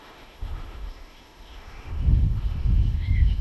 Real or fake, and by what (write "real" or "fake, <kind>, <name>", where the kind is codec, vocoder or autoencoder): fake, autoencoder, DAC-VAE